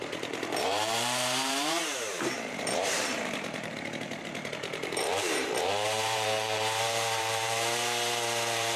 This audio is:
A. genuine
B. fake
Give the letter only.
B